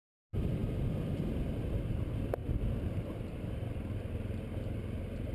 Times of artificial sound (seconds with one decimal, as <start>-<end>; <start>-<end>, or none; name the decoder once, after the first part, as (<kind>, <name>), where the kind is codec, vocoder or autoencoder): none